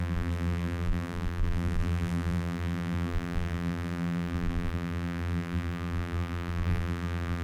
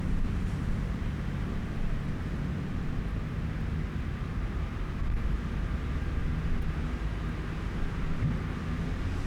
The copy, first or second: first